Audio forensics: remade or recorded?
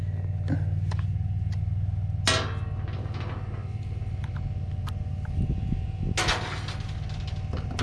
recorded